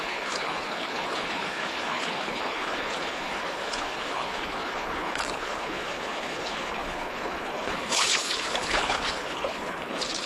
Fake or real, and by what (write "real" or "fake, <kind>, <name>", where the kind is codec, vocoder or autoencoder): fake, codec, HILCodec